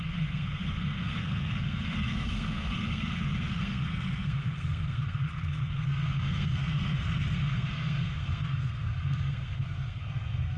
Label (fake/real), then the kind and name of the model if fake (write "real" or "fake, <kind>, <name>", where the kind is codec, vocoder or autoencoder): fake, codec, SNAC